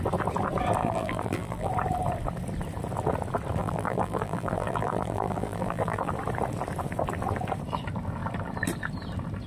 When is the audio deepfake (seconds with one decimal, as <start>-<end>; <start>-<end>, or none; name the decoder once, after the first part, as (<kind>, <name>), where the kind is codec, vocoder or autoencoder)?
0.8-1.7 (vocoder, BigVGAN v2); 3.6-6.1